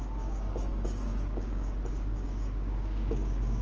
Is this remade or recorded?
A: remade